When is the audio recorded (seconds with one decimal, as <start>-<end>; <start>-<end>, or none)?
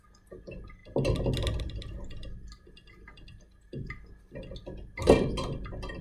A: 0.0-6.0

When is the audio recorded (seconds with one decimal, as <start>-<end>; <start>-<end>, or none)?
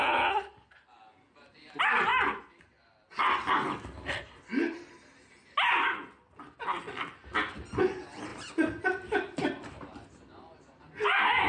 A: 0.0-11.5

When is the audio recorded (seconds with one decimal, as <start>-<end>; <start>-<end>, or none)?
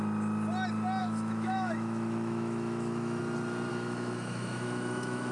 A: 0.0-1.0; 3.2-3.7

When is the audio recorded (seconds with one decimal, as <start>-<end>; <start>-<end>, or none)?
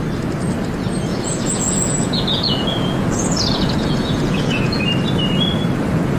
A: 0.0-1.1; 4.8-6.2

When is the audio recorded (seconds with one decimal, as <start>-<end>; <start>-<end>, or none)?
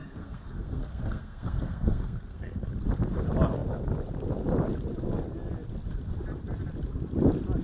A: 2.7-7.6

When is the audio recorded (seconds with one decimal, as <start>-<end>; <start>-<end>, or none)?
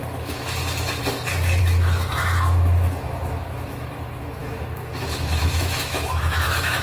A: 0.6-1.6